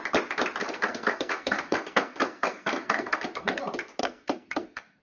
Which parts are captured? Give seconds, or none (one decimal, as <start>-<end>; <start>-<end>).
0.0-0.6; 3.6-4.0